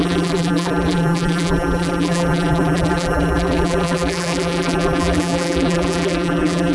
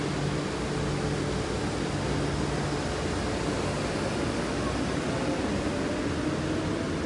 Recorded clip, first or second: second